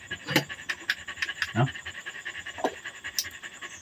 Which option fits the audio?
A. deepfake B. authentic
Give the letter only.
B